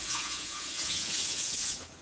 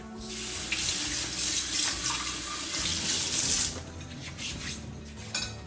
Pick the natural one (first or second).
second